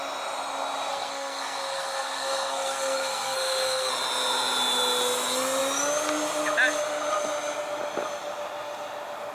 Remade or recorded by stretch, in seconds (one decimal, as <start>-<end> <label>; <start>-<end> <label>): 0.0-0.9 recorded; 0.9-3.9 remade; 3.9-9.3 recorded